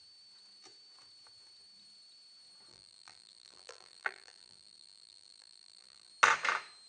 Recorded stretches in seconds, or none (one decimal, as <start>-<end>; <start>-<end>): 0.0-2.7; 6.1-6.9